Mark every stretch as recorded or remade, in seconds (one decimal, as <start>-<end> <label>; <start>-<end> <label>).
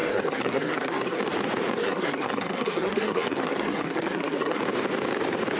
0.0-1.2 remade; 1.2-1.8 recorded; 1.8-4.6 remade; 4.6-5.6 recorded